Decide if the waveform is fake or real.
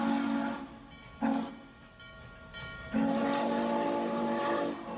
real